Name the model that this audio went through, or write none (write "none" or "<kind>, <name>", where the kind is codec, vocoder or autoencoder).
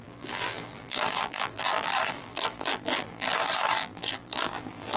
vocoder, BigVGAN v2